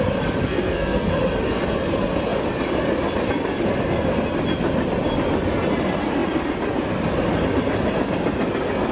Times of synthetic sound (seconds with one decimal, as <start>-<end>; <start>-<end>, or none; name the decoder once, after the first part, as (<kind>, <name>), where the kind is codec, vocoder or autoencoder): 0.4-1.1 (codec, SNAC)